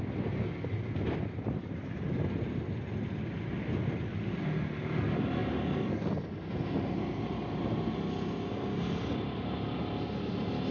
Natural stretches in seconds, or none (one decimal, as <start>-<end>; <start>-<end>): 0.0-10.7